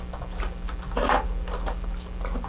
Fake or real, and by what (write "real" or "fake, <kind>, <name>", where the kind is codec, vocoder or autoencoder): real